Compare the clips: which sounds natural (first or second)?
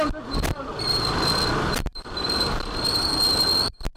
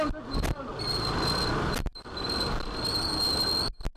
second